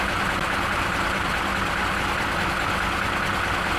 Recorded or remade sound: recorded